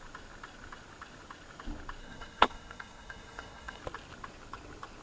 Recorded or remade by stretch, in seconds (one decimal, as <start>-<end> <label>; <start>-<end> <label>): 0.0-2.0 recorded; 2.0-3.8 remade; 3.8-5.0 recorded